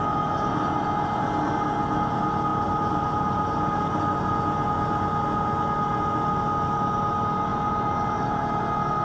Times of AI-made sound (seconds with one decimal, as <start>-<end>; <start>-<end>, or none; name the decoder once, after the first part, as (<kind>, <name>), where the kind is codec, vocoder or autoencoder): 2.5-4.2 (vocoder, BigVGAN v2); 7.5-8.6

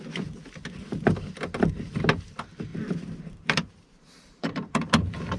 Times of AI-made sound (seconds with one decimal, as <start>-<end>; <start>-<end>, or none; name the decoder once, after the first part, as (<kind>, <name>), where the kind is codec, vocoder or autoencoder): 2.7-5.4 (vocoder, BigVGAN v2)

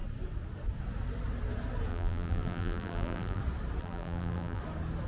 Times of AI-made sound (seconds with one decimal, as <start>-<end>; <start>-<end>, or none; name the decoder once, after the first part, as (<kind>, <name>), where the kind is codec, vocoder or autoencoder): 1.9-3.4 (vocoder, BigVGAN v2); 3.8-4.6

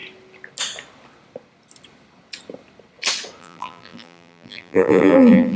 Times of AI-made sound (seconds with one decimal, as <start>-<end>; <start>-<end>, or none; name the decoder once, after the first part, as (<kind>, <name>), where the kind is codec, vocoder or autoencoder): 3.4-5.6 (vocoder, BigVGAN v2)

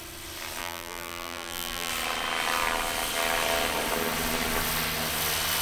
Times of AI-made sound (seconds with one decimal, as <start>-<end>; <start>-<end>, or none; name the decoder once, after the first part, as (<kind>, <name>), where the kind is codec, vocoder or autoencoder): 0.6-1.9 (vocoder, BigVGAN v2)